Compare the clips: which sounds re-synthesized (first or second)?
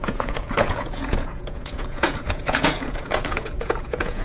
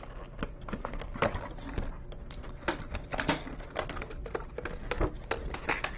first